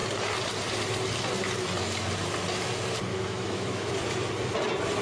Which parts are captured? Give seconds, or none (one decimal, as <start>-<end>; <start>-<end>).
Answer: 0.0-3.1; 3.9-5.0